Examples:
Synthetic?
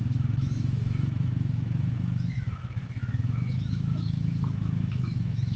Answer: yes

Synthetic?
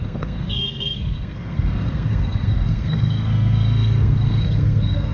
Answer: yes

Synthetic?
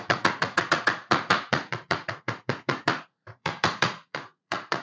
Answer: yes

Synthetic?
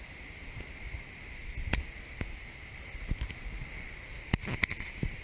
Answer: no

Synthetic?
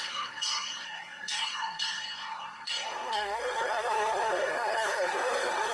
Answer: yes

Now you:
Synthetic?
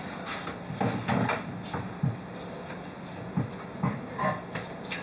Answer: no